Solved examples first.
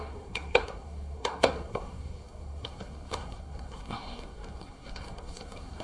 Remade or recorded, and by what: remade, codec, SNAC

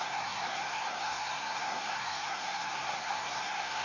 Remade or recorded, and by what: remade, codec, SNAC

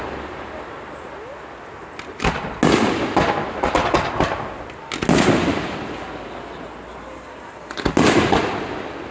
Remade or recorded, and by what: recorded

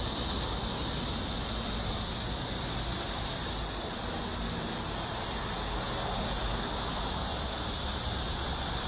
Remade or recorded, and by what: recorded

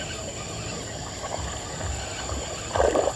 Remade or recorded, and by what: recorded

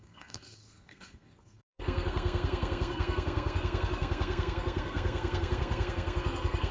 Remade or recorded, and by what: remade, codec, SNAC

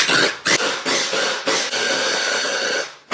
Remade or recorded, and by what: recorded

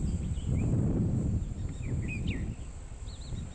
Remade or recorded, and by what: recorded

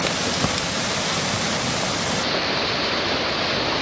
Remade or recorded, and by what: recorded